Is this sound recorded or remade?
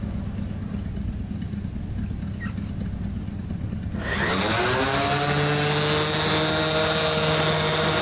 recorded